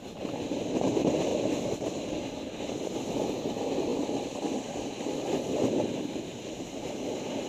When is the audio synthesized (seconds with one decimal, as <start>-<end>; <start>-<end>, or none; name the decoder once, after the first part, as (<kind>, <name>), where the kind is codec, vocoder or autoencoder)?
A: none